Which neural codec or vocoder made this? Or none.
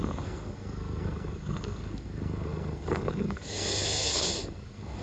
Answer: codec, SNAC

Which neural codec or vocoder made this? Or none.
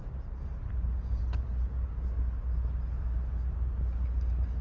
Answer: none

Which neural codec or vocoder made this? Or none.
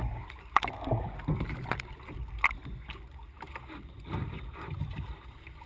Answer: none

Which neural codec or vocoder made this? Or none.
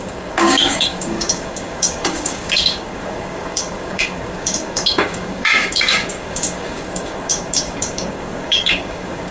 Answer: codec, DAC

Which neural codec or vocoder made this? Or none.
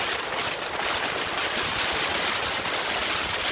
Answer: none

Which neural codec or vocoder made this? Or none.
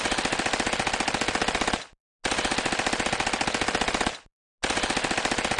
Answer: none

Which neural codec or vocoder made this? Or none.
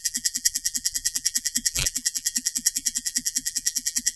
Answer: vocoder, BigVGAN v2